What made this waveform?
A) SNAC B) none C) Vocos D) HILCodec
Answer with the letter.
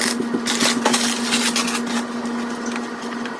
B